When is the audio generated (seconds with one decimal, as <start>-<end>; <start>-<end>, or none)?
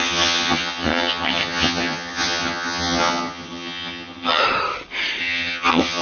0.0-4.4; 5.2-6.0